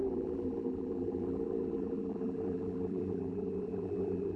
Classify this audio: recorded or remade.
remade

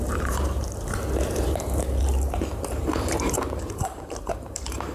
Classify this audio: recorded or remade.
remade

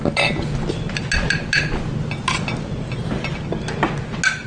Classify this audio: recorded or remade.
recorded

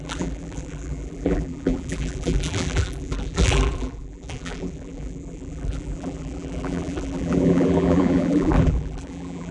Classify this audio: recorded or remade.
remade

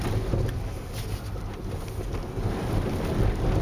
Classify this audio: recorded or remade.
recorded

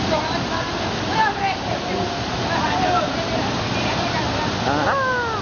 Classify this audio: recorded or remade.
recorded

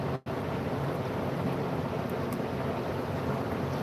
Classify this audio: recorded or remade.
recorded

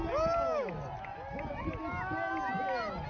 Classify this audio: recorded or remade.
recorded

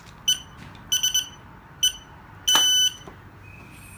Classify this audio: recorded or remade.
recorded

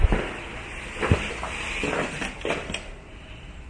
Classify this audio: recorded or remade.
remade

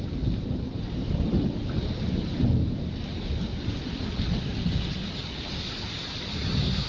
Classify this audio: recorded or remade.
recorded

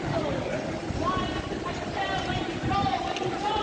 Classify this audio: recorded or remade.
recorded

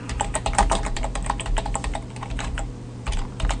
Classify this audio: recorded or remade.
remade